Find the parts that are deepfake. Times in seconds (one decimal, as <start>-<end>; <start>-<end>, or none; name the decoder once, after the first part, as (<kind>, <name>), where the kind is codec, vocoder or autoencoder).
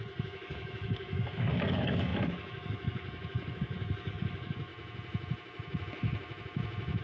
0.0-4.7 (codec, DAC)